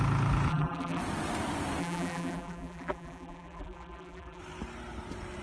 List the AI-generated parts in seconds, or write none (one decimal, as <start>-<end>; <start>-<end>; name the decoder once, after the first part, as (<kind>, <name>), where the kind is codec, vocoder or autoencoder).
0.5-1.0 (vocoder, BigVGAN v2); 1.8-4.4